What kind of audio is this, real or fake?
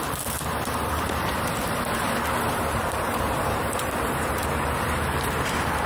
fake